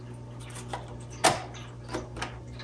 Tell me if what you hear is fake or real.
real